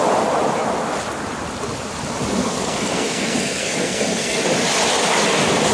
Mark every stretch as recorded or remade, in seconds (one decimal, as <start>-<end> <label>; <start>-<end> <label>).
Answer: 0.0-2.4 recorded; 2.4-4.4 remade; 4.4-5.7 recorded